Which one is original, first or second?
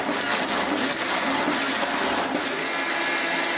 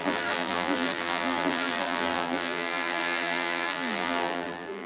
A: first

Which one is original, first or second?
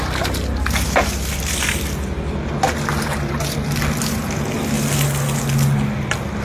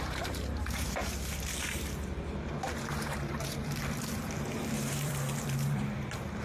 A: first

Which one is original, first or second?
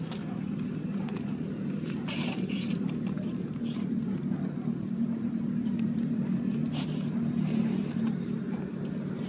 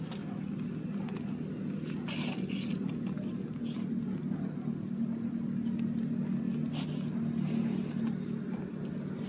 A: second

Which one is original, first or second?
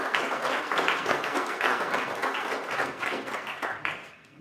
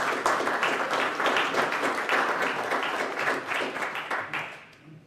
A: second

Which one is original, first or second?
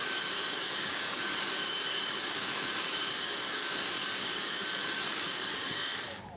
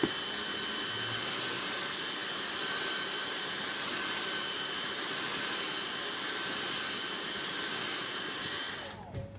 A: second